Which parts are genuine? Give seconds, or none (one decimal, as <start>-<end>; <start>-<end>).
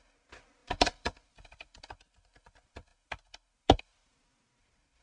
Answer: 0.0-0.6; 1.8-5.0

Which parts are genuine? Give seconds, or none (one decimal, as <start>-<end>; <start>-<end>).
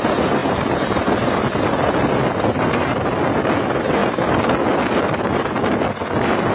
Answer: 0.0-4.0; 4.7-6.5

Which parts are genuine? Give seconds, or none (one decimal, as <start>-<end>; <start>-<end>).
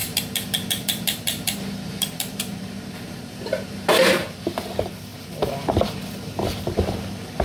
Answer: 4.4-7.4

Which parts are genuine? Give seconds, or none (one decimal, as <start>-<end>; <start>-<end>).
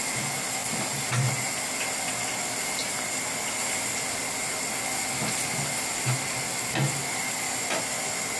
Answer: 0.0-2.8; 3.4-8.4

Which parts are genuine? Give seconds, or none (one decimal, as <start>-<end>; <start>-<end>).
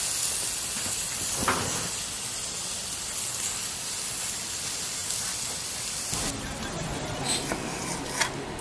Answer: 0.0-8.6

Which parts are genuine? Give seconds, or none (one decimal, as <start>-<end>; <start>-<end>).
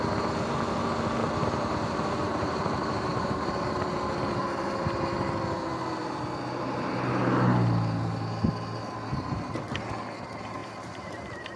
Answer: 0.0-1.2; 3.7-10.6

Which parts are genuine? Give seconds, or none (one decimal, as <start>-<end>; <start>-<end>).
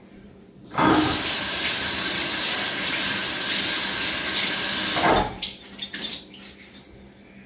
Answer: 3.2-7.5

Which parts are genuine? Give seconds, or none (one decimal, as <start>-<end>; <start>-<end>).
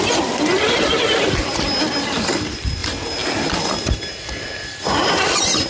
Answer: 0.0-5.7